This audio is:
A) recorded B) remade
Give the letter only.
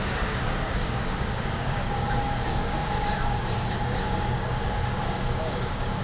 B